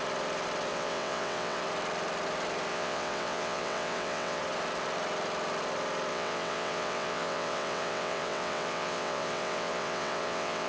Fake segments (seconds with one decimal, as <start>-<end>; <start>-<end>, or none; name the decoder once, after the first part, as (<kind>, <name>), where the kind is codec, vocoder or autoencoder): 0.7-1.6 (vocoder, WaveNeXt); 2.7-4.4; 6.1-10.7